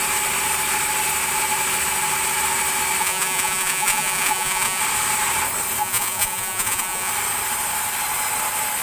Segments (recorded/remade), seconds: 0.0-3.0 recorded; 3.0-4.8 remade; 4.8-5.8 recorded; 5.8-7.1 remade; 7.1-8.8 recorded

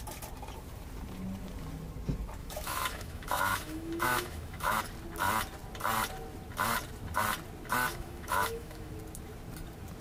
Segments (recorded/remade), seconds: 0.0-2.4 recorded; 2.4-4.8 remade; 4.8-7.9 recorded; 7.9-8.9 remade; 8.9-10.0 recorded